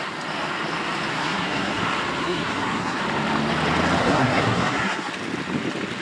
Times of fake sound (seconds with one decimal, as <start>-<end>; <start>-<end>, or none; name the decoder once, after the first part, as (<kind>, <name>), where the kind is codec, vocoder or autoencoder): 1.1-1.8 (codec, SNAC); 2.2-3.0; 4.0-5.1